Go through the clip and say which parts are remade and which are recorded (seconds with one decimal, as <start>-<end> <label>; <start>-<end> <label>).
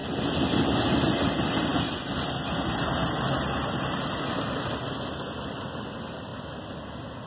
0.0-7.3 recorded